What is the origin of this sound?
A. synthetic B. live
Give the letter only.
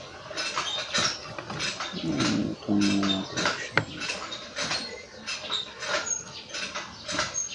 B